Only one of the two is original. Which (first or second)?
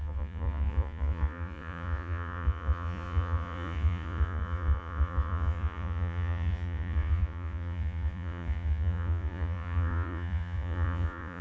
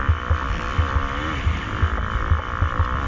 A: second